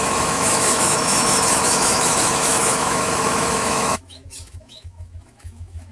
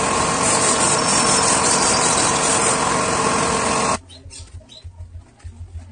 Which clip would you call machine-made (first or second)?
first